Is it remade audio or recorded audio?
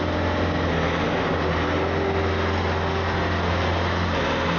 recorded